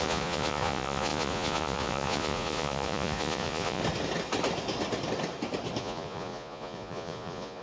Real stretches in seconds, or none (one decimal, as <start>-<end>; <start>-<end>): 3.8-5.8